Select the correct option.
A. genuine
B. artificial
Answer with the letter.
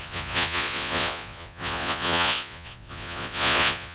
B